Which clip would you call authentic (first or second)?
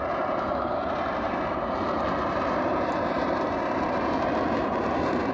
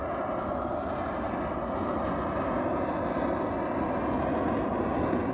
second